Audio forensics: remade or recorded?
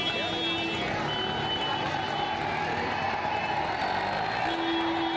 recorded